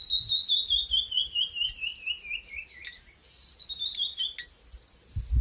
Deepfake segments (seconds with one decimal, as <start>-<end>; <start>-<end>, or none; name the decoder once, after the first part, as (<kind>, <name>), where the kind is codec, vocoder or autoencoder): none